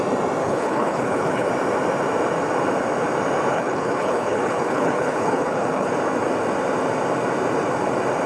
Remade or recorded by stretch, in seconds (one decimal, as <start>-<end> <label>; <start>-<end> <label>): 0.0-0.4 recorded; 0.4-1.5 remade; 1.5-3.5 recorded; 3.5-5.9 remade; 5.9-8.3 recorded